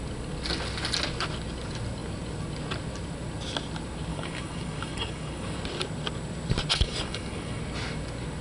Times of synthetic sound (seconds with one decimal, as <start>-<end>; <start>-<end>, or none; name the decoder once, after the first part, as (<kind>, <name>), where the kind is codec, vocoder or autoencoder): 4.1-5.6 (codec, DAC); 6.7-7.6